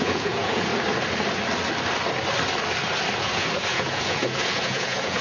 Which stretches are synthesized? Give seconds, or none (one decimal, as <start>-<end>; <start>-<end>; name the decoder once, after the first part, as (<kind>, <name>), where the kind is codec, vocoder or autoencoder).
0.0-0.7 (vocoder, Vocos); 3.2-5.2